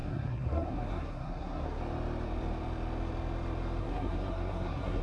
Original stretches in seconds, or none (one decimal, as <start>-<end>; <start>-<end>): 1.8-3.8